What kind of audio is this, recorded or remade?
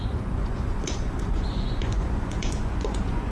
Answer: remade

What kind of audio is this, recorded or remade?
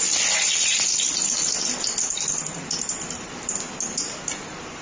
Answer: recorded